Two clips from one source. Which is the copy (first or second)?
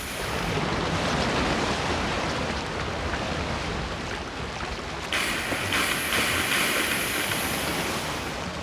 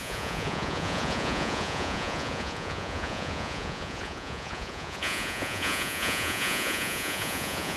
second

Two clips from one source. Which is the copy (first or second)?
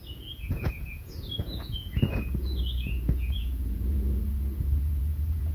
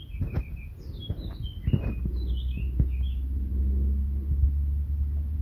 first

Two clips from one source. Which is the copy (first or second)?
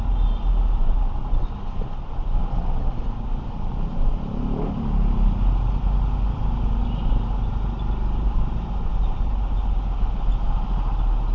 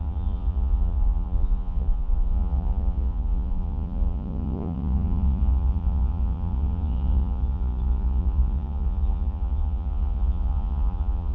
second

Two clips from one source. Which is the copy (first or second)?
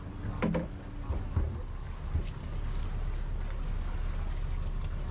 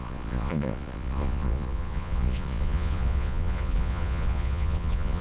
second